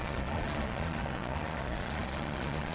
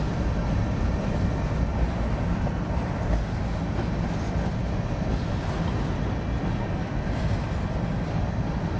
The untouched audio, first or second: second